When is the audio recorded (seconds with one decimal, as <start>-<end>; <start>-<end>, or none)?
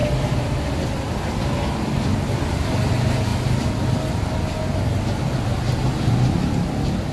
0.0-7.1